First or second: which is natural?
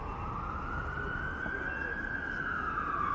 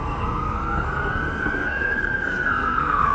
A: first